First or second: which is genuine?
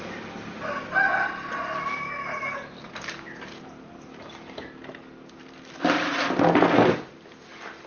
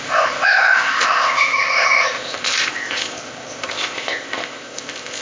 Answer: first